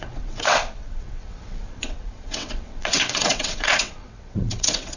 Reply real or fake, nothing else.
fake